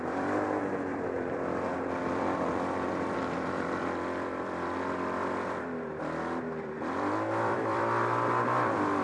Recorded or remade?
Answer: remade